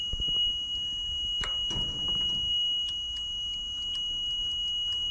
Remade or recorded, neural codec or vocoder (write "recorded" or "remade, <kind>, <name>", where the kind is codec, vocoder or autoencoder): recorded